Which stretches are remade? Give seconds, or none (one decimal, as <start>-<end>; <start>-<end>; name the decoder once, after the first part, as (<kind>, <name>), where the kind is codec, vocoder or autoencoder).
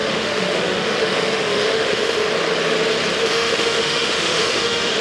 0.0-2.3 (autoencoder, DAC-VAE); 3.2-5.0